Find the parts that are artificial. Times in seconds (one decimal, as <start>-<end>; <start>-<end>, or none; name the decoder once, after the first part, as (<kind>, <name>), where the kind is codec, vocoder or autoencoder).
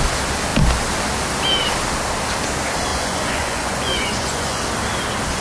2.9-4.6 (vocoder, Vocos)